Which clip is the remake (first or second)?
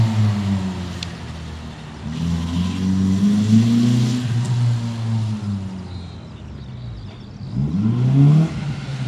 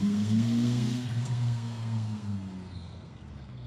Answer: second